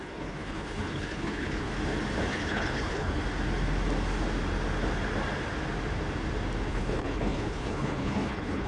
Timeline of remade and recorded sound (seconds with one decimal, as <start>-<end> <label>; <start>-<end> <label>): 0.0-1.7 remade; 1.7-2.3 recorded; 2.3-3.2 remade; 3.2-6.7 recorded; 6.7-8.7 remade